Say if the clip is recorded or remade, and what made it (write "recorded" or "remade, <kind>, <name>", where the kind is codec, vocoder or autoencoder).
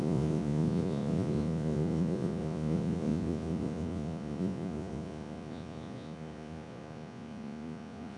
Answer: remade, vocoder, Vocos